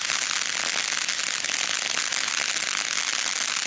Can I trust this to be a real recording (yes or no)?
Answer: yes